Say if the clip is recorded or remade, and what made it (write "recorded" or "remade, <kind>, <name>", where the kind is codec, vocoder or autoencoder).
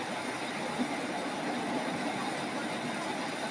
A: recorded